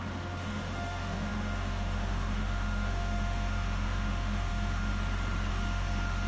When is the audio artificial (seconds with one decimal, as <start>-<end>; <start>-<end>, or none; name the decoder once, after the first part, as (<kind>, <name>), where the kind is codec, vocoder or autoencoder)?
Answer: 0.0-4.9 (autoencoder, DAC-VAE); 5.5-6.3